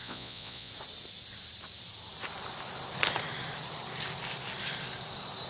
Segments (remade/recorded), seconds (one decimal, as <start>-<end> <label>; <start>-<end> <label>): 0.0-0.7 remade; 0.7-5.5 recorded